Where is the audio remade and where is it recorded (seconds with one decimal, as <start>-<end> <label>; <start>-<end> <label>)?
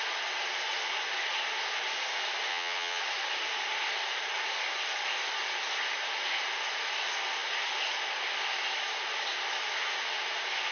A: 0.0-2.5 recorded; 2.5-3.0 remade; 3.0-10.7 recorded